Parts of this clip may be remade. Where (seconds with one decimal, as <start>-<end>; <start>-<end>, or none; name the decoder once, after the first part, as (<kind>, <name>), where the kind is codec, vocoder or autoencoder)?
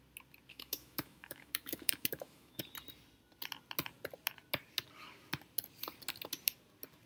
0.5-2.6 (autoencoder, DAC-VAE)